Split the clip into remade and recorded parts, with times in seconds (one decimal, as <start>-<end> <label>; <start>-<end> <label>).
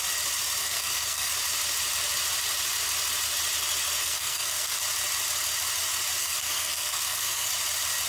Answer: 0.0-0.6 recorded; 0.6-1.3 remade; 1.3-4.0 recorded; 4.0-4.8 remade; 4.8-6.2 recorded; 6.2-7.5 remade; 7.5-8.1 recorded